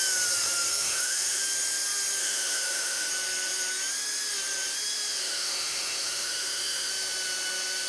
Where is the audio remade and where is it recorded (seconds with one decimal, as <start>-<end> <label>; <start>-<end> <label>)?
0.0-0.7 recorded; 0.7-1.4 remade; 1.4-2.2 recorded; 2.2-3.1 remade; 3.1-5.2 recorded; 5.2-6.9 remade; 6.9-7.9 recorded